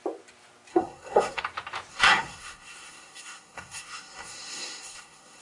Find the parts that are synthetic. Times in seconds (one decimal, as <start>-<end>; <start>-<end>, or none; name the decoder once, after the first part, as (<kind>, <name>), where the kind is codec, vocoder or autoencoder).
0.7-1.4 (codec, SNAC); 1.9-5.4